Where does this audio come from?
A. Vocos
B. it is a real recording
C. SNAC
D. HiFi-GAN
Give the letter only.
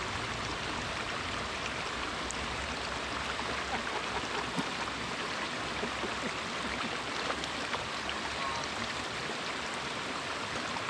B